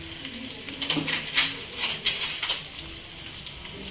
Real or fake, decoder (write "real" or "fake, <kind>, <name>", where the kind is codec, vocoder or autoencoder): real